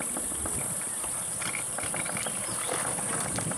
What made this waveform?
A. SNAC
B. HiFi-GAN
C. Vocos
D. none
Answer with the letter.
D